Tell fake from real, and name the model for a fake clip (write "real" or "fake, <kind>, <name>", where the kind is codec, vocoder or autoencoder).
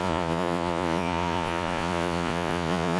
fake, vocoder, Vocos